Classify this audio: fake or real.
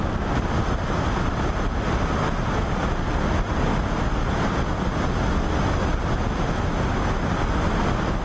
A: real